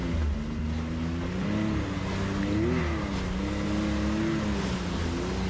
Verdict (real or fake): real